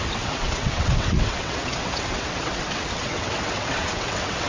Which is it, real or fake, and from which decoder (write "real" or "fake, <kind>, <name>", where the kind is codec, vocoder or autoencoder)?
fake, vocoder, WaveNeXt